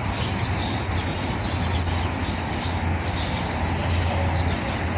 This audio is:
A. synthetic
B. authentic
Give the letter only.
B